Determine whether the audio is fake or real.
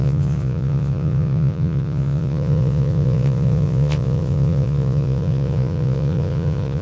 fake